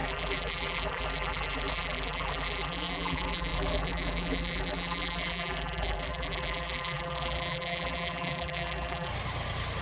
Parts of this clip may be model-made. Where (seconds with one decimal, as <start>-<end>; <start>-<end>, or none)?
0.0-9.1